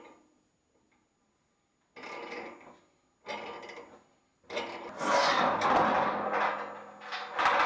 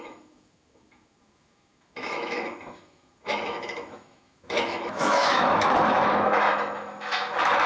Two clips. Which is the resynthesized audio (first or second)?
second